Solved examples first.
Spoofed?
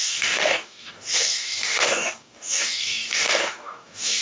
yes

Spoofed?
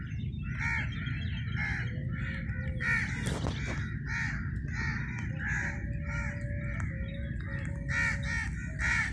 no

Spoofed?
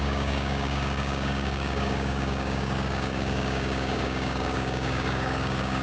yes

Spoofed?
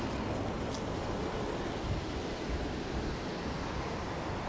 no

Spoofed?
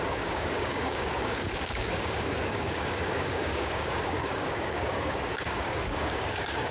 yes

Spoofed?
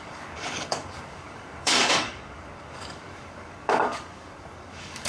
yes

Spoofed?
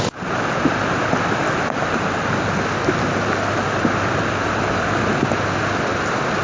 no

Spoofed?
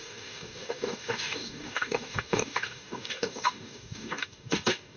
yes